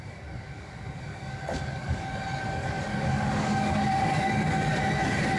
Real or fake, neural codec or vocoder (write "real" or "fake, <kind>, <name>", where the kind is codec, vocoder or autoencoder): fake, codec, DAC